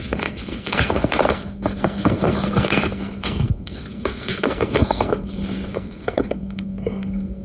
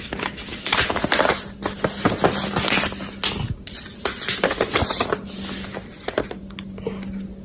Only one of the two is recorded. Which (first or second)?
second